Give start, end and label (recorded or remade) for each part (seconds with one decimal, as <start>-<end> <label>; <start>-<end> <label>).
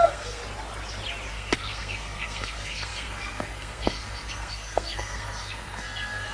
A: 0.0-0.4 remade; 0.4-1.3 recorded; 1.3-6.3 remade